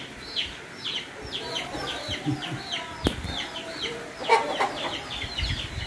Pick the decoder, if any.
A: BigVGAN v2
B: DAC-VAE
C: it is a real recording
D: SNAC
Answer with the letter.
C